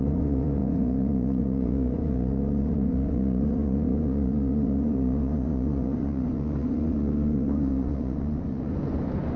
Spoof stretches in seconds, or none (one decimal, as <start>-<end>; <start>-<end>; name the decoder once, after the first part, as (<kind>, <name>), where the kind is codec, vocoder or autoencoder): 0.0-9.4 (vocoder, Vocos)